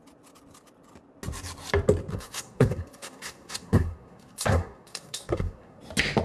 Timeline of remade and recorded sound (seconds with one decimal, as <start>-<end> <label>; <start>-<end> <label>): 0.0-2.1 recorded; 2.1-5.8 remade; 5.8-6.2 recorded

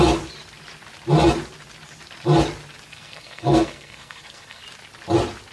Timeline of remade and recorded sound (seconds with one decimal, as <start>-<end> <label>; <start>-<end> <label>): 0.0-2.9 recorded; 2.9-4.6 remade; 4.6-5.5 recorded

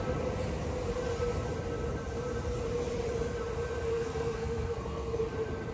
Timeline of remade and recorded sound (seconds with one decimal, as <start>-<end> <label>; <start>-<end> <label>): 0.0-3.9 recorded; 3.9-5.2 remade; 5.2-5.7 recorded